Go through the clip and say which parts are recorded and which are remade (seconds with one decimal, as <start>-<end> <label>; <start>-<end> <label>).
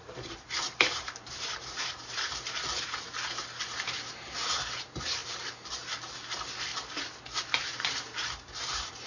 0.0-6.7 remade; 6.7-7.4 recorded; 7.4-9.1 remade